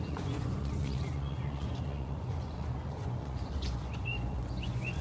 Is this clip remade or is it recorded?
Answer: remade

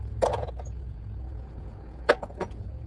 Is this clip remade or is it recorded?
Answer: remade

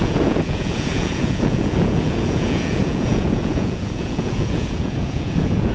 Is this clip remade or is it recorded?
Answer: remade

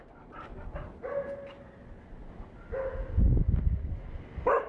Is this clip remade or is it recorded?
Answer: recorded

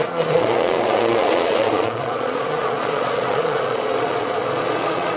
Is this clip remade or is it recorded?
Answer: remade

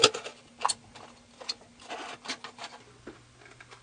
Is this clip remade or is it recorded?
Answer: recorded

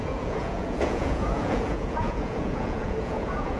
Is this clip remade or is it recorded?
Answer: remade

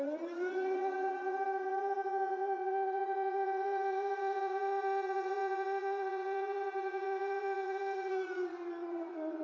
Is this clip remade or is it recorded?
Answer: remade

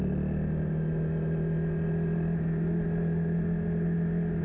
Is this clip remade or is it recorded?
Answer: recorded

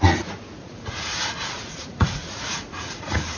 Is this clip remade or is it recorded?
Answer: remade